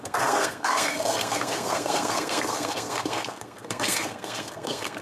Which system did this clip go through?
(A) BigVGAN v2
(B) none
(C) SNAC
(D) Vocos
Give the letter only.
C